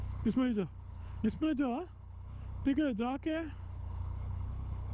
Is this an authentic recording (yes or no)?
no